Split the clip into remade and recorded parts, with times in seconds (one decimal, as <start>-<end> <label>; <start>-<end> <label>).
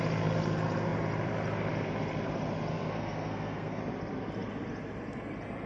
0.0-2.7 recorded; 2.7-3.8 remade; 3.8-5.7 recorded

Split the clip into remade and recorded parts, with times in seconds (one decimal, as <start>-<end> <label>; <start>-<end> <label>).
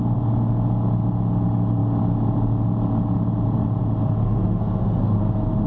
0.0-4.2 recorded; 4.2-5.2 remade; 5.2-5.7 recorded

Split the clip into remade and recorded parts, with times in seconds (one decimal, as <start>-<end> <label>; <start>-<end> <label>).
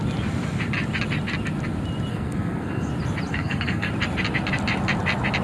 0.0-2.1 recorded; 2.1-2.9 remade; 2.9-3.3 recorded; 3.3-3.9 remade; 3.9-5.4 recorded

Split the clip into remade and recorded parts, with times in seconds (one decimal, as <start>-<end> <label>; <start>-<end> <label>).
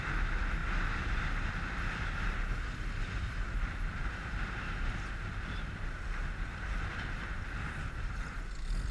0.0-8.9 recorded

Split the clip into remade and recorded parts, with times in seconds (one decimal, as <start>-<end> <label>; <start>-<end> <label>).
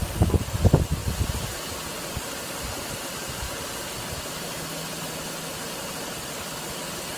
0.0-7.2 recorded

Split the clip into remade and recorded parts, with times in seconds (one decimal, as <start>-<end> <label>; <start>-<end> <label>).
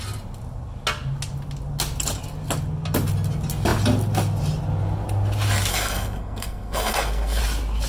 0.0-5.7 recorded; 5.7-7.4 remade; 7.4-7.9 recorded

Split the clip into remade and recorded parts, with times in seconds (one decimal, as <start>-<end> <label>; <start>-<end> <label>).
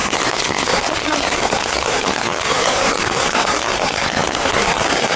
0.0-5.2 remade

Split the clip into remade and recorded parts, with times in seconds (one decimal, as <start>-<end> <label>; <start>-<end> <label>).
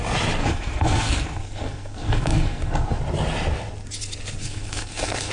0.0-0.4 recorded; 0.4-3.0 remade; 3.0-4.4 recorded; 4.4-5.3 remade